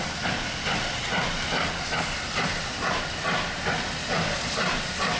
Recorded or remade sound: recorded